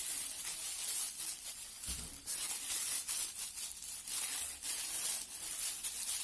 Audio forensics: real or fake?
real